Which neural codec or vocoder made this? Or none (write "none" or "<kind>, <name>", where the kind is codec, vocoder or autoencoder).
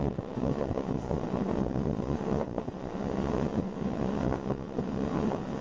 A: vocoder, WaveNeXt